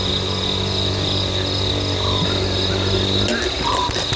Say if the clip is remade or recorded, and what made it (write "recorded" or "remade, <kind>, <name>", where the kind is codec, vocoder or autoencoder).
recorded